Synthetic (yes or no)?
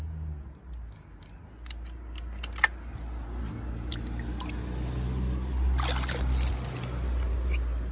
no